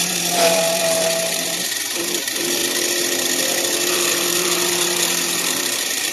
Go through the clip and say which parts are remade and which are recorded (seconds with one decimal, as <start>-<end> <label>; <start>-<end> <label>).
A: 0.0-2.6 remade; 2.6-3.9 recorded; 3.9-6.1 remade